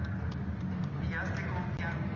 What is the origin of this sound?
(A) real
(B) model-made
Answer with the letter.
A